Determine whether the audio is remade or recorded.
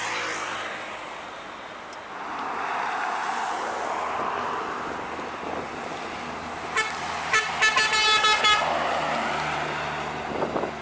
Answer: recorded